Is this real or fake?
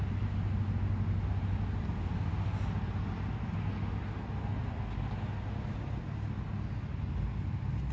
real